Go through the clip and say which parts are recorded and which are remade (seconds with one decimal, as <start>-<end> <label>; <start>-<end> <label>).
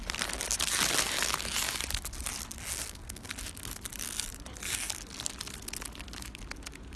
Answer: 0.0-2.7 recorded; 2.7-3.3 remade; 3.3-7.0 recorded